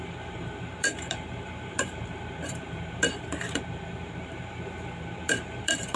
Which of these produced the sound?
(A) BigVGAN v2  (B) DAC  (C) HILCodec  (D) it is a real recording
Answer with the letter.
A